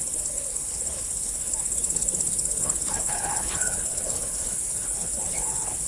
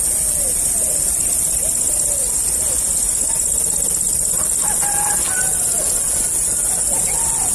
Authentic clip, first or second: second